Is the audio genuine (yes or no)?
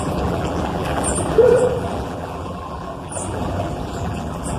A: no